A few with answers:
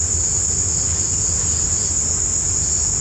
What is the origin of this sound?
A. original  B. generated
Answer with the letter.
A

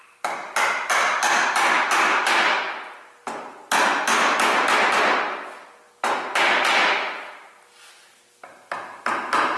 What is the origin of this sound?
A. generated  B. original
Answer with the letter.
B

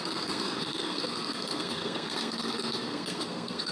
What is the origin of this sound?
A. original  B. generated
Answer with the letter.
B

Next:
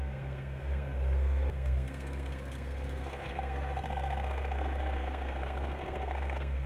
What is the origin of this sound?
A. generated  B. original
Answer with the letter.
A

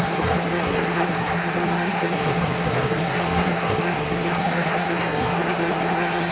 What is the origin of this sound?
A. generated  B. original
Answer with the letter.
A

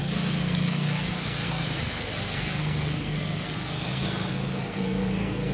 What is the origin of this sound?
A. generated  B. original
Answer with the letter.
A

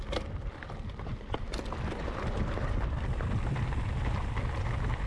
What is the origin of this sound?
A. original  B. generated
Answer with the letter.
A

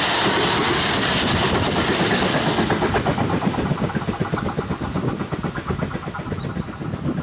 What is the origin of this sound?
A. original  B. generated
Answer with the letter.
A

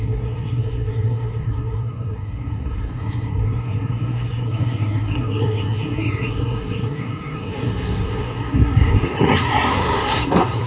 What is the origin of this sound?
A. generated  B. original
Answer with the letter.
A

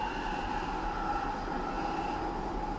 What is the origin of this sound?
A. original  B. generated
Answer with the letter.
A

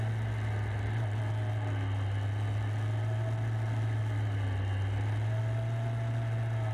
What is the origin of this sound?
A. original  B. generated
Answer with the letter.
A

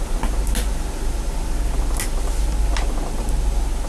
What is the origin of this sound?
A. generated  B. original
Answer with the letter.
B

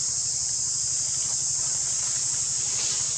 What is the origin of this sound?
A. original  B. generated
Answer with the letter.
A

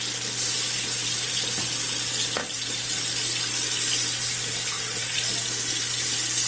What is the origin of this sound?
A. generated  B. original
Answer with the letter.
B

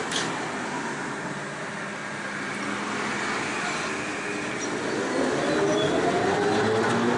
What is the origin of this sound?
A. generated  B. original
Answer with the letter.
B